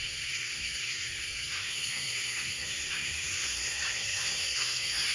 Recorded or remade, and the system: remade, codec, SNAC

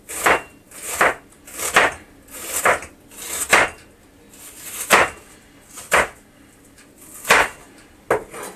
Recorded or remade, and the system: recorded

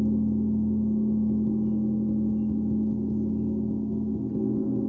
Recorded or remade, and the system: recorded